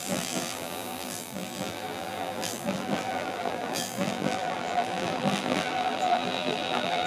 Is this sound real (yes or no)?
no